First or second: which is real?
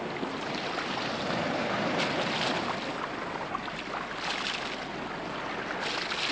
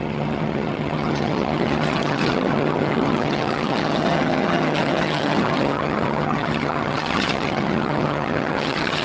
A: first